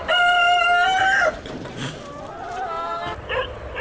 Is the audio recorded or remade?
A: recorded